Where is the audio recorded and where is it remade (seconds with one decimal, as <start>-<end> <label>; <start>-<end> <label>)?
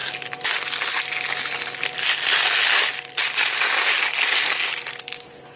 0.0-5.6 recorded